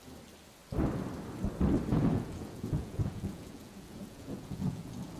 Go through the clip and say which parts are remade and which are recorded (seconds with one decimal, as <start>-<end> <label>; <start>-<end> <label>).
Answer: 0.0-1.9 recorded; 1.9-5.2 remade